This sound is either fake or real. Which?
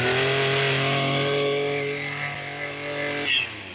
real